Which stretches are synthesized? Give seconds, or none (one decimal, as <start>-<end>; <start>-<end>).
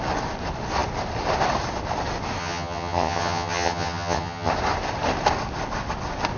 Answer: 2.4-4.5